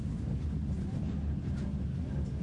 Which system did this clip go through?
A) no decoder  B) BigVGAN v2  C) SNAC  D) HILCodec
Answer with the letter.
A